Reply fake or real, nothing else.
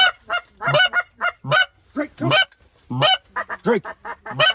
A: real